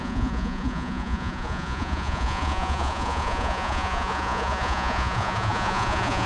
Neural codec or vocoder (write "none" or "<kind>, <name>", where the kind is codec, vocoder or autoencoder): vocoder, Vocos